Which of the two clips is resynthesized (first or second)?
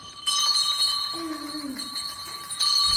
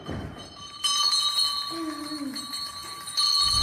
first